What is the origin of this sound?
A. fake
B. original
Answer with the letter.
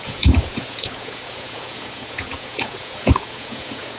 A